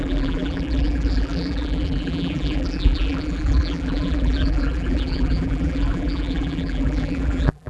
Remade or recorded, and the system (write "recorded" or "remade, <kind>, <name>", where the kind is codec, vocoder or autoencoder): remade, vocoder, BigVGAN v2